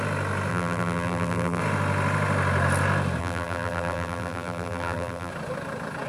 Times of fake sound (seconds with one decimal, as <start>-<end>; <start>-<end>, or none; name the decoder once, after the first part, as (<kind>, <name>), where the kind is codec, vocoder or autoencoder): 0.5-1.6 (vocoder, BigVGAN v2); 3.2-5.3